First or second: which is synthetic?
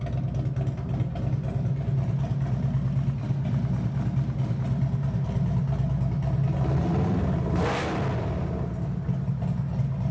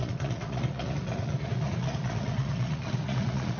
second